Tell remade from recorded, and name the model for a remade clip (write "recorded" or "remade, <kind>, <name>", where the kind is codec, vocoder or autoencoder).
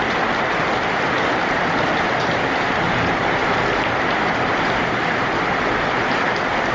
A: remade, vocoder, BigVGAN v2